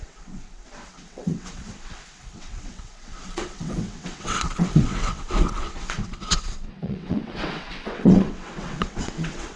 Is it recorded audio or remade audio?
remade